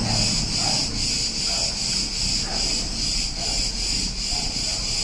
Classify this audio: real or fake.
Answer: real